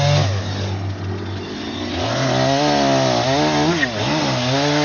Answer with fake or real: real